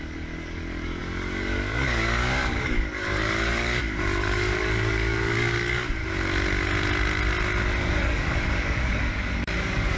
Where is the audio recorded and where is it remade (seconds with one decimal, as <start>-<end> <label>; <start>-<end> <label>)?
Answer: 0.0-6.0 remade; 6.0-7.9 recorded; 7.9-10.0 remade